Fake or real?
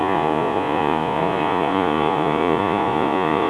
fake